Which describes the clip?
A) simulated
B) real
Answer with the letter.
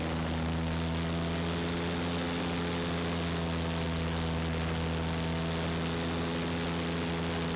B